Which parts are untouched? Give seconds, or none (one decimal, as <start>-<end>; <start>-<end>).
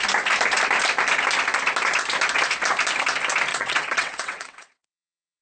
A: 0.0-3.5